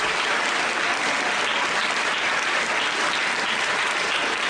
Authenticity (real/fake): real